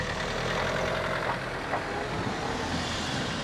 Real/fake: real